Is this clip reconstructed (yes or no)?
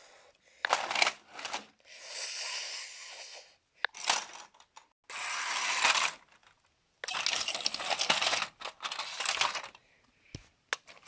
no